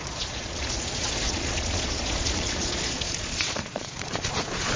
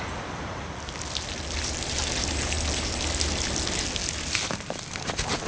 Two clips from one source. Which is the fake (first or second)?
first